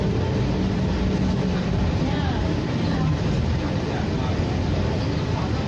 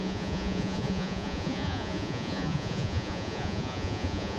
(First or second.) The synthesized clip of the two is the second